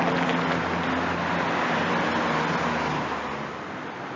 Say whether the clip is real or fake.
real